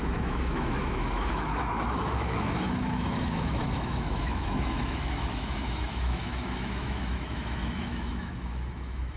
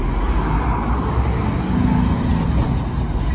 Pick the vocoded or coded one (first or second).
first